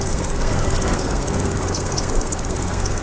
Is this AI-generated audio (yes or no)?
yes